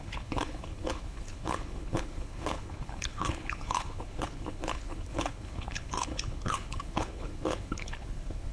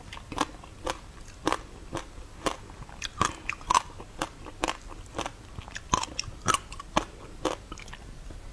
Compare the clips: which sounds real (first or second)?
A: second